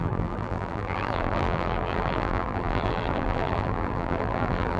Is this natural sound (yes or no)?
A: no